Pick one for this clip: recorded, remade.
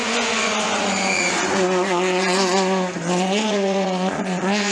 remade